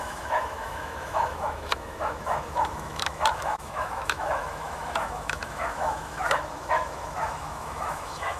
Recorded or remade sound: remade